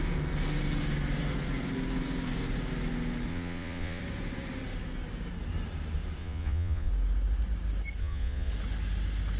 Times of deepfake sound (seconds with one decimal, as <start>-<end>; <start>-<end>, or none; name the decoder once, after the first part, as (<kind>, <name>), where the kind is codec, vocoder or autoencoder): 3.3-4.0 (vocoder, Vocos); 6.2-6.9; 8.0-8.5